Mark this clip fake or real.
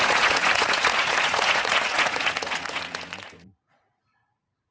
fake